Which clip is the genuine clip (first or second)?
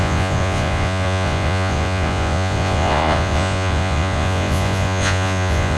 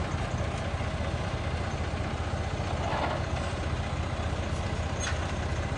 second